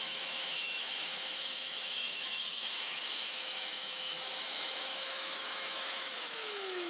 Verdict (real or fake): fake